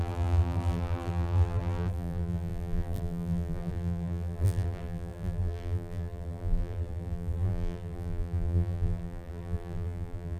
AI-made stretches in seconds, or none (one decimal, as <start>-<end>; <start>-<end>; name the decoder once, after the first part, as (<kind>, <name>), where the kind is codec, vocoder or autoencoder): 0.0-10.4 (vocoder, BigVGAN v2)